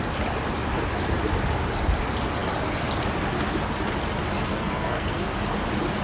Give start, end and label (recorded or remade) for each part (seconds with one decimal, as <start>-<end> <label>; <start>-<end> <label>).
0.0-4.5 recorded; 4.5-5.3 remade; 5.3-6.0 recorded